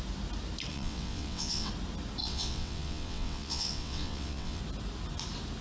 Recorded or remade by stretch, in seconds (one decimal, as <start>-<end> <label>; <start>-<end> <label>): 0.0-0.7 recorded; 0.7-1.7 remade; 1.7-2.2 recorded; 2.2-4.6 remade; 4.6-5.6 recorded